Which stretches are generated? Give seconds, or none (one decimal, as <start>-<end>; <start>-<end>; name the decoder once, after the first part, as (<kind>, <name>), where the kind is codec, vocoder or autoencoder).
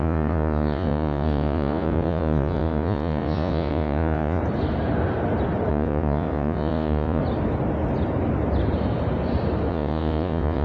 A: 0.0-4.4 (vocoder, Vocos); 5.7-7.2; 9.7-10.6